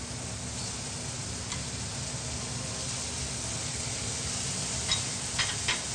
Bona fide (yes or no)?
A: yes